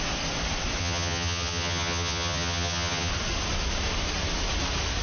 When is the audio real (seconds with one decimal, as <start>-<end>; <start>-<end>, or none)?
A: 0.0-0.8; 3.1-5.0